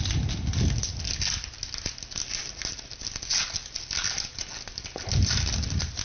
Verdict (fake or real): real